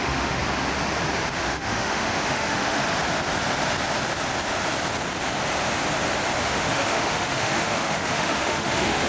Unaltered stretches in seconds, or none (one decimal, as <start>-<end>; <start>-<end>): 0.4-1.3; 2.8-6.4